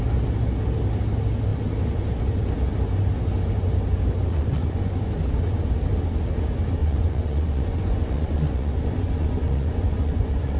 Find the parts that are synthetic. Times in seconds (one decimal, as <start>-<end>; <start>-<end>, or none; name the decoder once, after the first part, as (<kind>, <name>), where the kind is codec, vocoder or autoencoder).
4.3-5.1 (vocoder, Vocos); 6.8-10.6